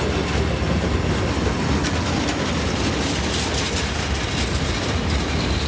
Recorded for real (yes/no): yes